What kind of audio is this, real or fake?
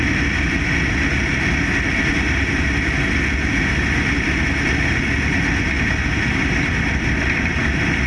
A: real